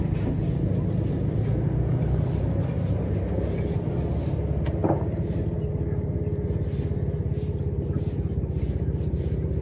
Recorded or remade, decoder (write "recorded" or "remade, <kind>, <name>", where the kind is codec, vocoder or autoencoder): recorded